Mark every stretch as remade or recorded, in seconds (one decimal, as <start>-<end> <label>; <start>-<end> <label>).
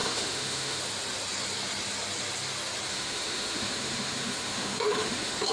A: 0.0-0.8 remade; 0.8-2.9 recorded; 2.9-5.5 remade